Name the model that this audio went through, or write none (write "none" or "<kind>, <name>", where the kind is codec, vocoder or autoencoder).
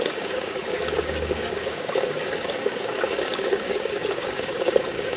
codec, DAC